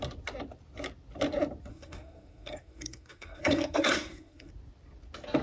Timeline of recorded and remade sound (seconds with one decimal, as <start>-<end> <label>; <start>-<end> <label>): 0.0-1.7 recorded; 1.7-4.5 remade; 4.5-5.4 recorded